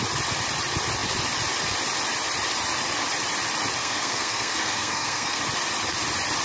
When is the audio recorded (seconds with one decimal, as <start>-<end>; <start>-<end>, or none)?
0.0-3.8; 5.4-6.4